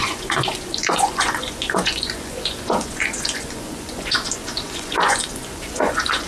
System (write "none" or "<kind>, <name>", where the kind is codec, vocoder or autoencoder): vocoder, Vocos